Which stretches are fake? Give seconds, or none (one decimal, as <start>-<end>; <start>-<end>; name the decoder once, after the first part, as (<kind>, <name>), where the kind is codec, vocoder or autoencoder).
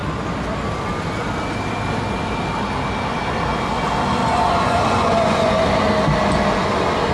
4.2-5.8 (vocoder, Vocos)